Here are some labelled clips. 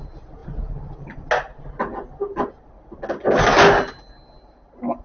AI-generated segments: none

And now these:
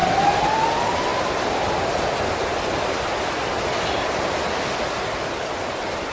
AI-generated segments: none

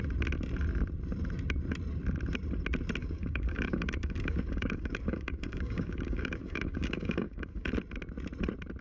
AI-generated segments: 3.0-7.7

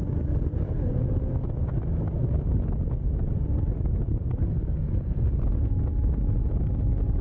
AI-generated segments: none

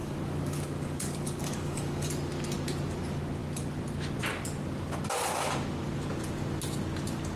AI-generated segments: 0.0-2.1

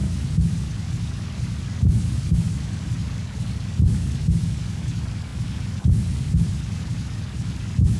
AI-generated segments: 0.0-8.0

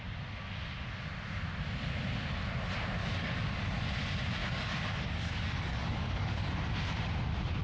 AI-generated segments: 3.0-3.8; 4.4-6.5

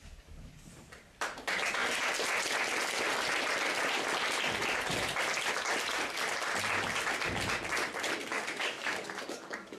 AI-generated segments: 0.0-0.7; 8.3-9.8